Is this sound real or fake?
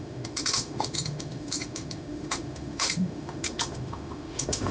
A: fake